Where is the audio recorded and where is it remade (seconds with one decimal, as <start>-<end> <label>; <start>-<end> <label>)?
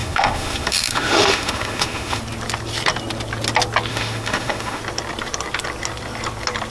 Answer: 0.0-2.2 remade; 2.2-3.9 recorded; 3.9-4.8 remade; 4.8-6.7 recorded